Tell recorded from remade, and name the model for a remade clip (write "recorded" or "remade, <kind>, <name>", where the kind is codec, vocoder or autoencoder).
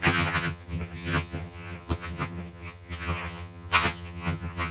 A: remade, vocoder, HiFi-GAN